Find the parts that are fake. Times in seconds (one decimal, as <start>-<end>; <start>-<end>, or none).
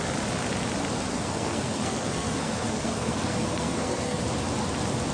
1.1-4.2